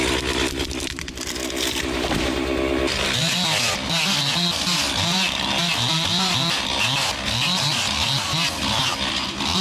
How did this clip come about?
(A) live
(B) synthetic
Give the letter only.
A